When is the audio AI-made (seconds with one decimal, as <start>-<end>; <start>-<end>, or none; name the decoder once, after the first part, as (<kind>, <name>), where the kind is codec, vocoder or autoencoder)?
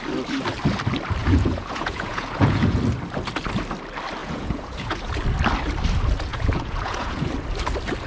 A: 1.2-2.8 (vocoder, Vocos); 4.2-5.2; 6.3-7.3